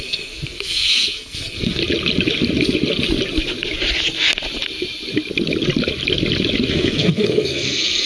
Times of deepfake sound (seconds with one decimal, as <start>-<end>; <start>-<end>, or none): 0.0-1.8; 6.7-8.1